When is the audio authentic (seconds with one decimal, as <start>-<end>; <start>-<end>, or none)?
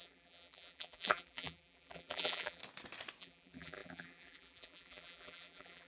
2.6-3.2